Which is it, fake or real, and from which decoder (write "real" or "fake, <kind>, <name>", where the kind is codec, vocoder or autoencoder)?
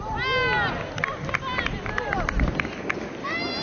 real